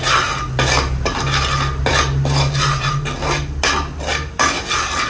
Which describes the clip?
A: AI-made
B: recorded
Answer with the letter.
B